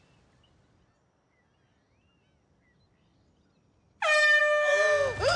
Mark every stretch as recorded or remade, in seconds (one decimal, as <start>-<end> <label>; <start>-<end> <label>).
0.0-5.4 recorded